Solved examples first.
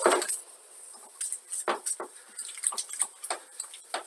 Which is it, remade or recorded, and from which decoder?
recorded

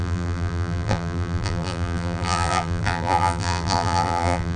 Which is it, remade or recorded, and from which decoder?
remade, vocoder, BigVGAN v2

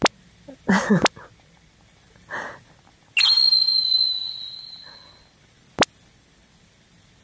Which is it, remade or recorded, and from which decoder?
recorded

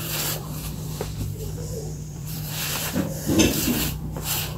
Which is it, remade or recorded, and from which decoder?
remade, vocoder, BigVGAN v2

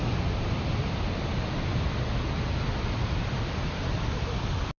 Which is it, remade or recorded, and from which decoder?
recorded